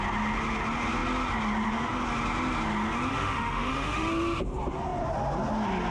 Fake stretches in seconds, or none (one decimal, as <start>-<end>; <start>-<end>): 3.1-4.1